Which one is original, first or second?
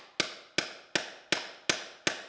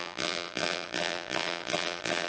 first